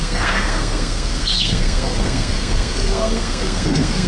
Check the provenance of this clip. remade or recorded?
remade